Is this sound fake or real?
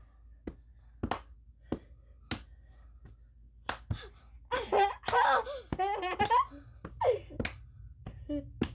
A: real